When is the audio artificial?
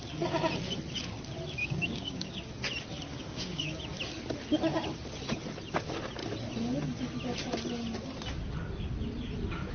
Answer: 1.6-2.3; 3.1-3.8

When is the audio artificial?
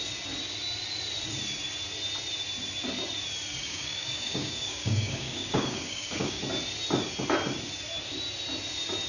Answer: 3.6-6.4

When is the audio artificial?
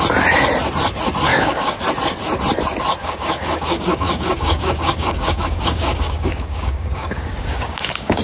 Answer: 1.3-1.8; 3.0-8.2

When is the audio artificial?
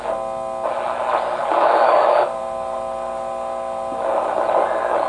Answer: 1.4-2.4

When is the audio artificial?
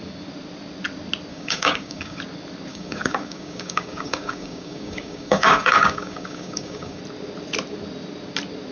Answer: 1.3-2.2; 2.7-7.0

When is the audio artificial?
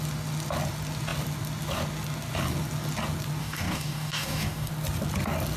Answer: 3.4-4.7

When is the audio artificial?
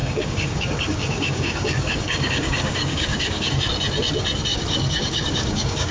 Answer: 0.0-3.5; 4.5-5.9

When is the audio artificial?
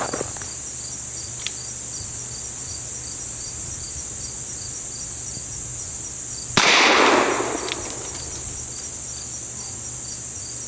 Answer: none